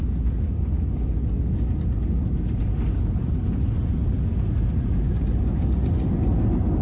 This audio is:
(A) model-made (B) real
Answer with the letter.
B